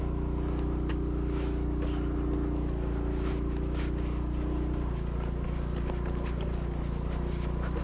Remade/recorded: recorded